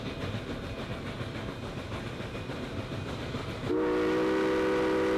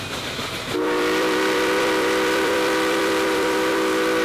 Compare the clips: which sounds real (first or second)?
first